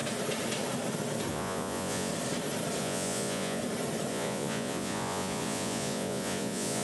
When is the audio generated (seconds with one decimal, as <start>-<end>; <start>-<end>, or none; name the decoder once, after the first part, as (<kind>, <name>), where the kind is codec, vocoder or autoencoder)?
1.3-2.1 (vocoder, Vocos); 2.8-3.6; 4.1-6.8